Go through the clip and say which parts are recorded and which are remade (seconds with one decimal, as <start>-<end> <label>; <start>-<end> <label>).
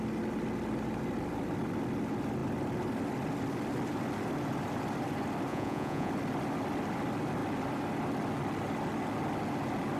0.0-5.5 recorded; 5.5-6.1 remade; 6.1-10.0 recorded